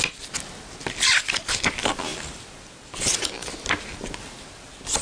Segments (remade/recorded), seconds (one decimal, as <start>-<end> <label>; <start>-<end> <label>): 0.0-5.0 recorded